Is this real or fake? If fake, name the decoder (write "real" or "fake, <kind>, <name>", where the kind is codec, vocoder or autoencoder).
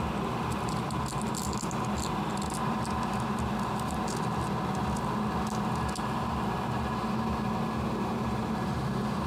real